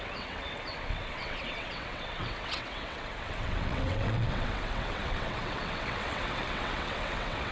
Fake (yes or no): yes